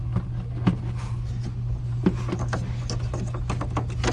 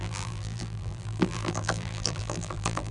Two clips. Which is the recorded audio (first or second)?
first